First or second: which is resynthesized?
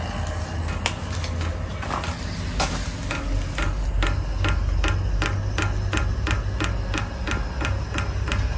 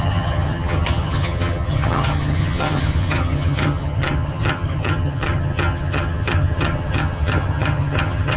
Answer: second